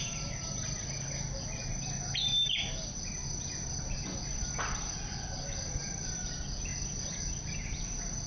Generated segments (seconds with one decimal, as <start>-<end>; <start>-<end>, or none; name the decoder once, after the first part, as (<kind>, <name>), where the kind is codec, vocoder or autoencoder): none

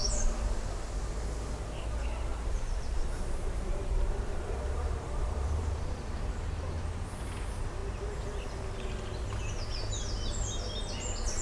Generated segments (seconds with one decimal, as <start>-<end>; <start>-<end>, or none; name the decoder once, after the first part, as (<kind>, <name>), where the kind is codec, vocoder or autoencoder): 2.3-7.3 (vocoder, BigVGAN v2)

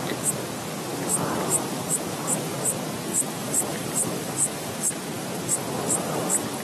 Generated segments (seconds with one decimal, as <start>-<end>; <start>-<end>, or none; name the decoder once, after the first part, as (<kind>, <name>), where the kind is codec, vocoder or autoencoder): 3.1-4.7 (vocoder, BigVGAN v2)